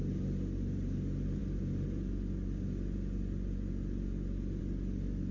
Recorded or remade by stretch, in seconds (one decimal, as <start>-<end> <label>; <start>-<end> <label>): 0.0-5.3 recorded